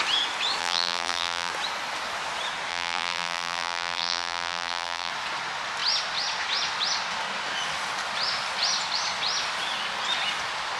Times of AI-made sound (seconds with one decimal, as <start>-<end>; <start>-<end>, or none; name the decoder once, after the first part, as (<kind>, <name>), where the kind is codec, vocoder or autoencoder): 0.6-1.5 (vocoder, BigVGAN v2); 2.7-5.1